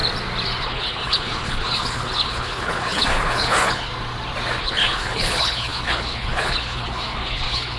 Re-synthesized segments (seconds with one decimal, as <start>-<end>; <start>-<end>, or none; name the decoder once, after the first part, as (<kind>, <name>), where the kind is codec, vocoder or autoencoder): 0.6-3.9 (codec, HILCodec); 4.6-7.8